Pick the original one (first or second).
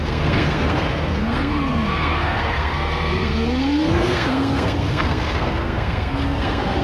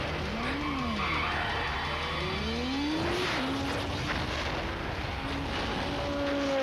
second